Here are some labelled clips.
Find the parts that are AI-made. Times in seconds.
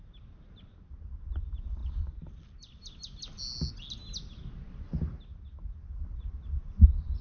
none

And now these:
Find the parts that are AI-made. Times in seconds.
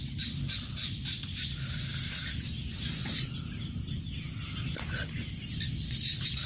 none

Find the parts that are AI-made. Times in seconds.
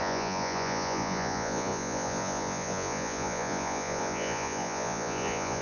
0.0-5.6 (vocoder, Vocos)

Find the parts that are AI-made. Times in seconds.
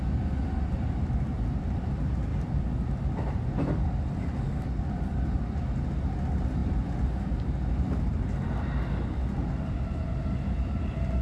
none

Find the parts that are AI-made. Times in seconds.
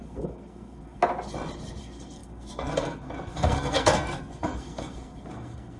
0.0-1.0 (codec, SNAC); 1.8-5.8